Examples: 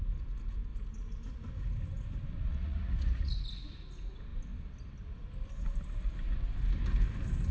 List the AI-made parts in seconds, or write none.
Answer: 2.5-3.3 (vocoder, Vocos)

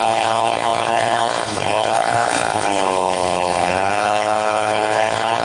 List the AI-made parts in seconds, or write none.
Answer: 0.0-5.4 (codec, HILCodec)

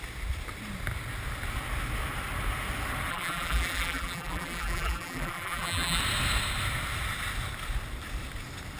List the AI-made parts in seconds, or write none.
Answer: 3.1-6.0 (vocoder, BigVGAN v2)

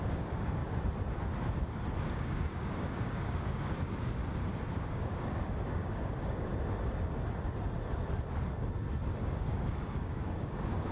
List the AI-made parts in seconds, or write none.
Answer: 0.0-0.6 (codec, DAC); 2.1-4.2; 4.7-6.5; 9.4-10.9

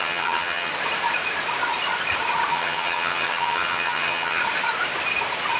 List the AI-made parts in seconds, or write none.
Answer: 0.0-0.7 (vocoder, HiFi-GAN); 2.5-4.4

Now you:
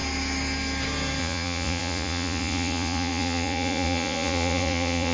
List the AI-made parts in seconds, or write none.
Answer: 1.2-5.1 (vocoder, Vocos)

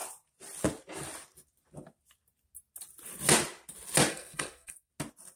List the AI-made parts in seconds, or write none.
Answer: 4.1-4.9 (codec, SNAC)

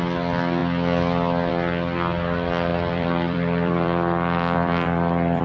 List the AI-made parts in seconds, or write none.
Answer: 2.7-5.4 (vocoder, BigVGAN v2)